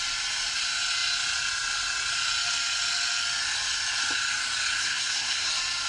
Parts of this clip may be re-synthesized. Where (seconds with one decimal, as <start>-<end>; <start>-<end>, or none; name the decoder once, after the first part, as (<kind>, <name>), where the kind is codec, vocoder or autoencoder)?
4.8-5.5 (codec, SNAC)